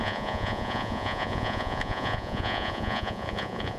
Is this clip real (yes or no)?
no